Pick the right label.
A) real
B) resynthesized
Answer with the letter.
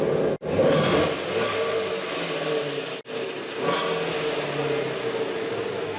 A